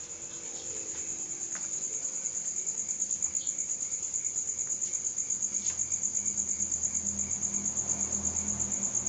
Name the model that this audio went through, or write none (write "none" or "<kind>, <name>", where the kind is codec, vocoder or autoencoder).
none